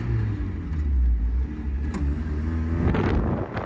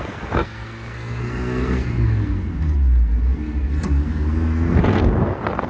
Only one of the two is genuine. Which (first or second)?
first